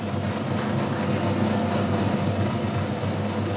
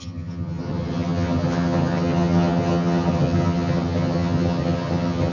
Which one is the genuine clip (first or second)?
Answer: first